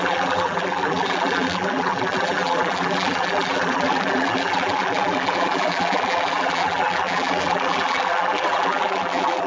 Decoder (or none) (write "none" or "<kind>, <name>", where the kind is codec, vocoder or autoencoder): vocoder, BigVGAN v2